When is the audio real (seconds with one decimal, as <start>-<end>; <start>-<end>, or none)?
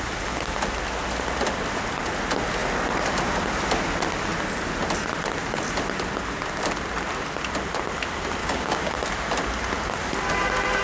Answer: 0.0-8.4; 8.9-10.8